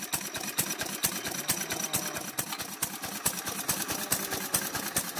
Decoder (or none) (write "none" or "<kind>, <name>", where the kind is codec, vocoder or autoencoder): none